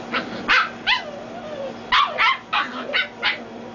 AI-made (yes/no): no